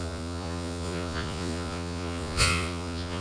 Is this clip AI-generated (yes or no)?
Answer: yes